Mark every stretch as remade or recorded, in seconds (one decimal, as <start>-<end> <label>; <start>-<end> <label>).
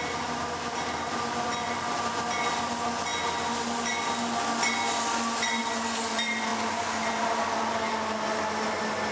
0.0-9.1 recorded